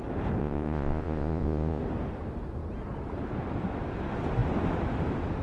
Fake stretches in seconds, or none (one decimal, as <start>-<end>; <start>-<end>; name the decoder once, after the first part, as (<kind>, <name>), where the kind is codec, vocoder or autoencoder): 0.4-1.8 (vocoder, Vocos)